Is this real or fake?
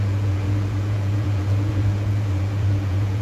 fake